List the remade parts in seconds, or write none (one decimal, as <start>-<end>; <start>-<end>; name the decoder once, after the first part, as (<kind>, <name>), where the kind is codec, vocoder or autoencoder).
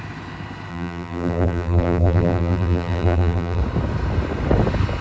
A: 0.7-3.6 (vocoder, BigVGAN v2)